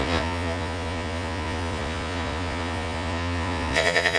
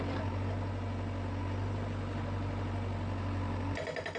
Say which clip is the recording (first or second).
second